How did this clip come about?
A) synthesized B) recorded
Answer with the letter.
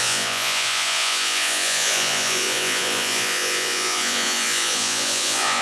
A